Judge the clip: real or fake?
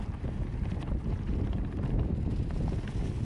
real